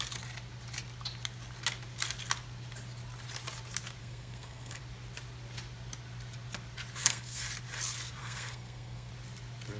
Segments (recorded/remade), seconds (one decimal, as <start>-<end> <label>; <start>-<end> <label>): 0.0-4.0 recorded; 4.0-4.8 remade; 4.8-7.0 recorded; 7.0-7.5 remade; 7.5-8.2 recorded; 8.2-9.1 remade; 9.1-9.8 recorded

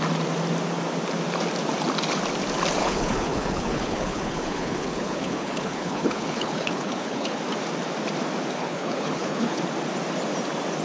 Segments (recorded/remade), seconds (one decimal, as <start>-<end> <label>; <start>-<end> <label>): 0.0-2.8 recorded; 2.8-7.4 remade; 7.4-8.6 recorded; 8.6-9.6 remade; 9.6-10.8 recorded

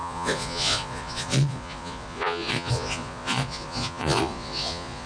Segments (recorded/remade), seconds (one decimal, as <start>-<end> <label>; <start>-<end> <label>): 0.0-5.1 remade

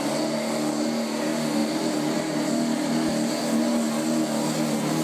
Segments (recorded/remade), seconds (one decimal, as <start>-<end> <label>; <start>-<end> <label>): 0.0-5.0 recorded

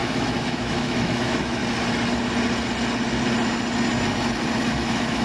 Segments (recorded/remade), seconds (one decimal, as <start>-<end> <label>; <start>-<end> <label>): 0.0-1.6 remade; 1.6-4.7 recorded; 4.7-5.2 remade

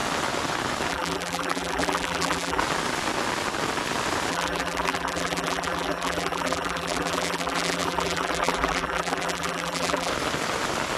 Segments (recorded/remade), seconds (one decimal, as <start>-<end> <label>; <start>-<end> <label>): 0.0-0.9 recorded; 0.9-2.6 remade; 2.6-4.3 recorded; 4.3-10.1 remade; 10.1-11.0 recorded

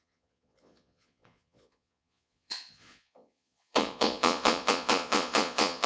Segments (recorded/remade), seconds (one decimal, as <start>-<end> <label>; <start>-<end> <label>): 0.0-5.9 remade